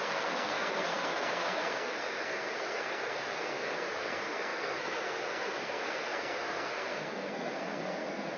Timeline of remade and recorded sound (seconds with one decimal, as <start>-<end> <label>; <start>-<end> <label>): 0.0-8.4 remade